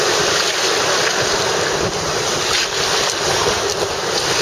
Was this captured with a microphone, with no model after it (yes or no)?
yes